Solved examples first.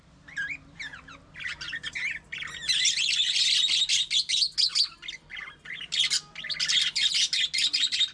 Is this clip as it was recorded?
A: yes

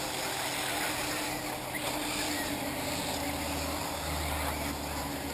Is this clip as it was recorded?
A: yes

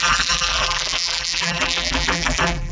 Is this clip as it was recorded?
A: no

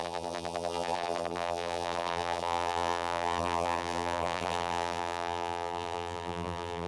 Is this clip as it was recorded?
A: no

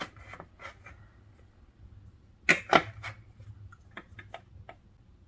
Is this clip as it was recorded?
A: yes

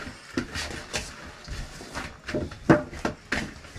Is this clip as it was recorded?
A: yes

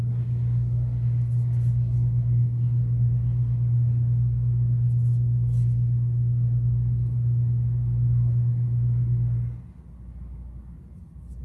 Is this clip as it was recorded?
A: yes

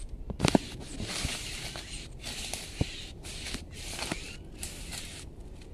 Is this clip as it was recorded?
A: no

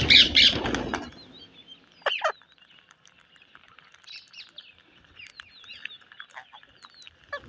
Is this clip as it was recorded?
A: yes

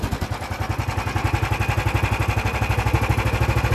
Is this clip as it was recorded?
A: yes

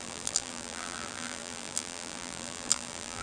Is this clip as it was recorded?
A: no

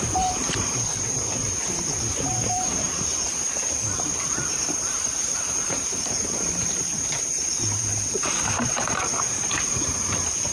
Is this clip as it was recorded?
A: no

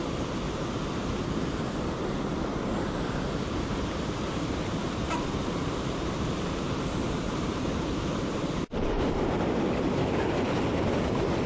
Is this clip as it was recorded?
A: no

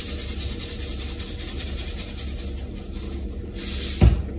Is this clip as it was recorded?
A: yes